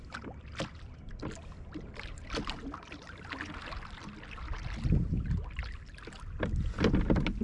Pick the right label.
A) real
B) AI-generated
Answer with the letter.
A